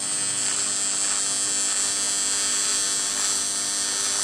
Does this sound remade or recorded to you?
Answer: recorded